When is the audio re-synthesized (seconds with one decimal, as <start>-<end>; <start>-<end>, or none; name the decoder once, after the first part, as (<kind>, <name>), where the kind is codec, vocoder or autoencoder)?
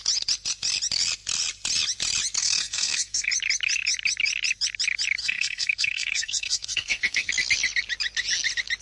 2.4-3.3 (codec, SNAC); 5.2-7.3